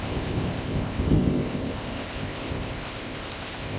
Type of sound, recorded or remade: remade